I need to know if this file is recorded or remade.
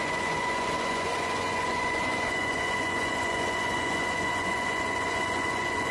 remade